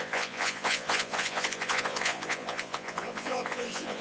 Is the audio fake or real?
fake